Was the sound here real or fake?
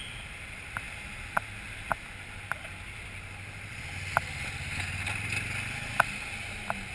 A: real